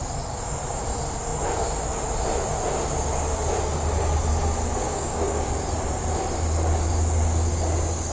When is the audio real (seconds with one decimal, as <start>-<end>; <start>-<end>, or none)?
0.0-4.8; 5.5-8.1